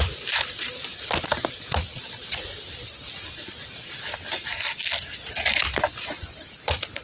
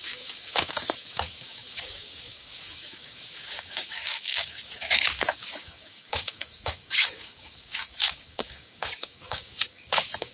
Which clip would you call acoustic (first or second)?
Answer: first